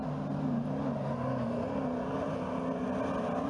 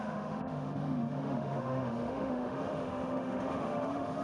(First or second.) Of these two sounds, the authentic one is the first